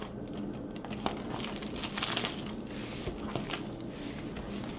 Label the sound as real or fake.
real